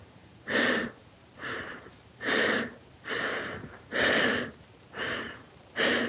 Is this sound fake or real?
fake